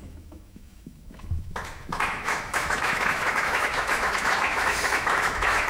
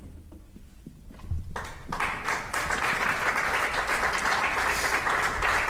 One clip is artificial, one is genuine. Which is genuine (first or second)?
second